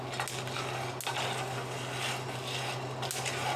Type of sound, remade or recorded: recorded